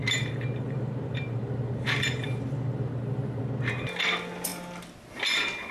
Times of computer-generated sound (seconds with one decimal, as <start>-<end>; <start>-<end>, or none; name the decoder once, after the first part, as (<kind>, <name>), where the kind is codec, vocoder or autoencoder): 0.0-3.4 (vocoder, BigVGAN v2)

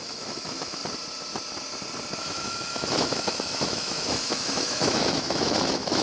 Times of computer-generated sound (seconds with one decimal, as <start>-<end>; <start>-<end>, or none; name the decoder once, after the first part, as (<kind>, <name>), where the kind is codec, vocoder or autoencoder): 0.0-0.8 (autoencoder, DAC-VAE); 2.2-6.0

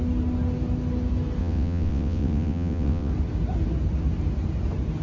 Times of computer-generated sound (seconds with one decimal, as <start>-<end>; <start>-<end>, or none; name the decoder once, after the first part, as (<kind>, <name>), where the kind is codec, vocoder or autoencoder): 1.4-3.1 (vocoder, WaveNeXt)

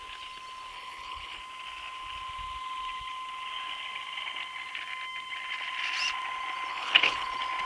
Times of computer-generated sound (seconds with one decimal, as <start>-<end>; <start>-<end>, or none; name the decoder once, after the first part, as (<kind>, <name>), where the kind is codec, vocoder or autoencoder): 0.7-1.4 (codec, HILCodec); 6.7-7.3

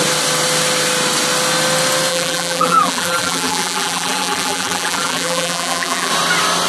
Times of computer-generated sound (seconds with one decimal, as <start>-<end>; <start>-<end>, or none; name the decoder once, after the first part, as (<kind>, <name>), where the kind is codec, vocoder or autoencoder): 2.1-6.1 (vocoder, BigVGAN v2)

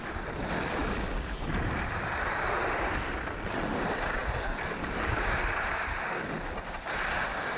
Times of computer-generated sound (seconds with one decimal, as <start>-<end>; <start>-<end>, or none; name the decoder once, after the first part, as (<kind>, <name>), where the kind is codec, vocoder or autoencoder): none

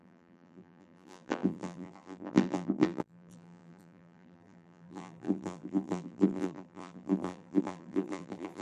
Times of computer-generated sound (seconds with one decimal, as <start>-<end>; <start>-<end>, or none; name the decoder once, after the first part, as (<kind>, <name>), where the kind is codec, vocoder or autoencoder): 0.0-8.6 (vocoder, BigVGAN v2)